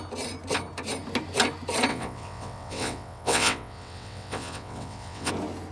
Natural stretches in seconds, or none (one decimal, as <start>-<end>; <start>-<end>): 0.0-1.9; 5.3-5.7